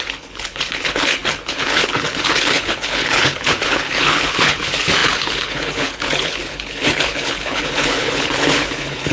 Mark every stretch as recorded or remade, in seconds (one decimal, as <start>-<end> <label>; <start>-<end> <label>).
0.0-9.1 remade